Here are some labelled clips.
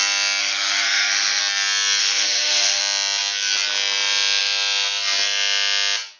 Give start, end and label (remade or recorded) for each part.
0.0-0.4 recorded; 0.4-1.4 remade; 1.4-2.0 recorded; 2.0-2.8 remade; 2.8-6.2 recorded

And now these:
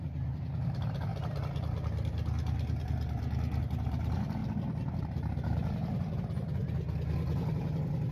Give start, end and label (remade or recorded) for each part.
0.0-1.1 remade; 1.1-3.6 recorded; 3.6-4.4 remade; 4.4-5.0 recorded; 5.0-6.6 remade; 6.6-8.1 recorded

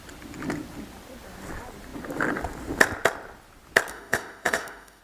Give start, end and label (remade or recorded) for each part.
0.0-3.9 recorded; 3.9-5.0 remade

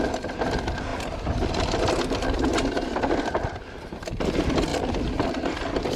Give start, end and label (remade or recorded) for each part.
0.0-6.0 recorded

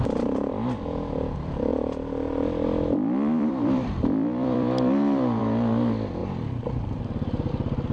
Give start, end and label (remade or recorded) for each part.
0.0-1.7 recorded; 1.7-5.4 remade; 5.4-6.2 recorded; 6.2-7.5 remade; 7.5-7.9 recorded

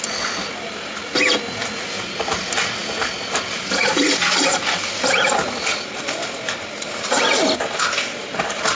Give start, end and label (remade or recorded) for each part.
0.0-8.7 recorded